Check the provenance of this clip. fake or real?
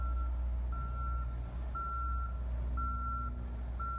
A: real